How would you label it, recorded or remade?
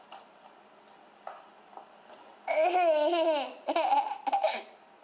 recorded